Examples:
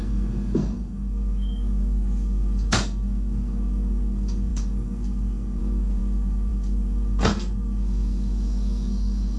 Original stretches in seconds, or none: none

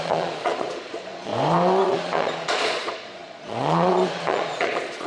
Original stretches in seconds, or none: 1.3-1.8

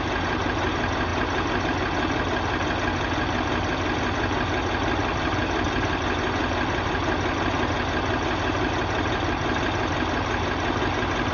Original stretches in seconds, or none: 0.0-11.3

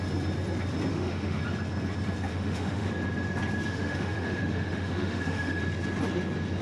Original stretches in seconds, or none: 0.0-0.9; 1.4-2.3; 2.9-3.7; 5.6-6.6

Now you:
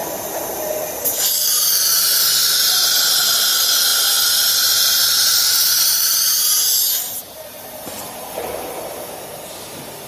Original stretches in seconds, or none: 0.0-5.9; 9.1-10.1